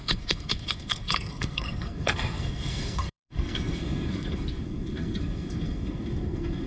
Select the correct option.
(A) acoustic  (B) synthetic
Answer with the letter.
B